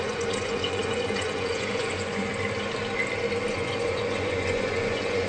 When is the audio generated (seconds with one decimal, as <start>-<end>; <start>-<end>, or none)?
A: 0.0-2.3; 3.5-5.3